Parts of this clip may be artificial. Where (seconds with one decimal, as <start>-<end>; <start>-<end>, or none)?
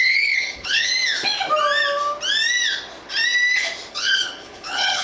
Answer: 0.0-0.9; 3.9-5.0